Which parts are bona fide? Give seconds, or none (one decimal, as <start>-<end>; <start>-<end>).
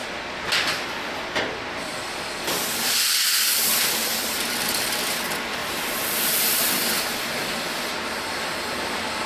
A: 0.0-9.3